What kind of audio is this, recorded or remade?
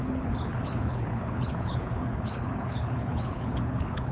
remade